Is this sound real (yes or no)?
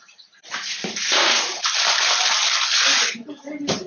yes